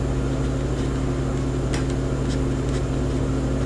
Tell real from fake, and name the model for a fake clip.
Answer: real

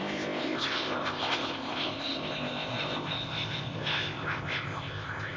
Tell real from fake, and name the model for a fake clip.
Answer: fake, codec, ZipCodec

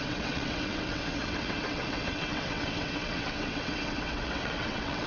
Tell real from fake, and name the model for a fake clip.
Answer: fake, vocoder, WaveNeXt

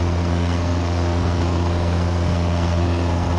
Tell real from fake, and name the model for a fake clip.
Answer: fake, codec, SNAC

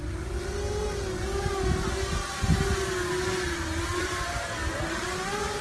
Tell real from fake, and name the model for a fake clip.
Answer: real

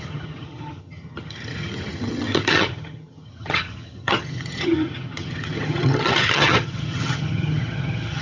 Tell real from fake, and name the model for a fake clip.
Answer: fake, vocoder, HiFi-GAN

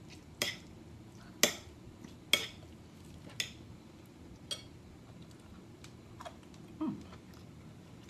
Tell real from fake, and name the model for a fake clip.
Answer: real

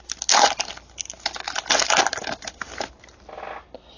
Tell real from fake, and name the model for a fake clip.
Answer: real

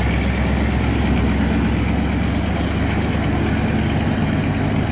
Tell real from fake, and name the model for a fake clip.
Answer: real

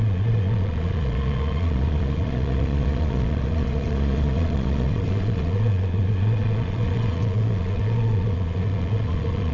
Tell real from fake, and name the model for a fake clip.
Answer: fake, vocoder, Vocos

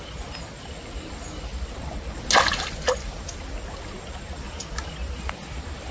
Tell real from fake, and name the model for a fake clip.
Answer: real